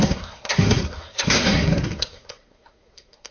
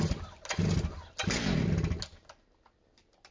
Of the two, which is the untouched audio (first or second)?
second